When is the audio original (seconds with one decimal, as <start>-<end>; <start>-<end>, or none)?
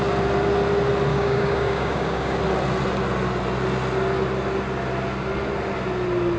0.0-1.1; 2.4-6.4